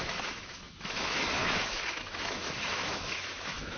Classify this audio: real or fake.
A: fake